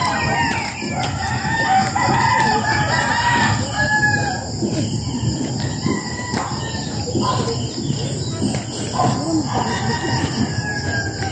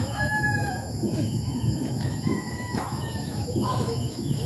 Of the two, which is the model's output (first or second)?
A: second